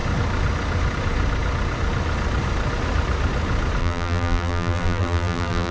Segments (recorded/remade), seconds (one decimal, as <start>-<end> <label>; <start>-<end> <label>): 0.0-3.8 recorded; 3.8-5.7 remade